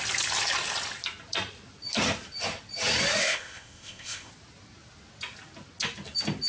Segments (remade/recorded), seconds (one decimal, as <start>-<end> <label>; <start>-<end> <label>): 0.0-3.2 recorded; 3.2-4.3 remade; 4.3-6.5 recorded